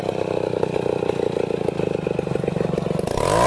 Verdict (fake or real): real